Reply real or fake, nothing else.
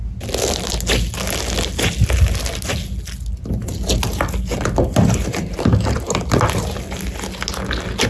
real